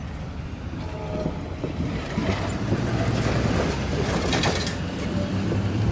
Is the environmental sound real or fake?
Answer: real